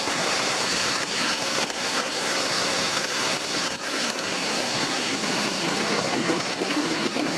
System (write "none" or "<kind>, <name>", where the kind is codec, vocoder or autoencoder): codec, SNAC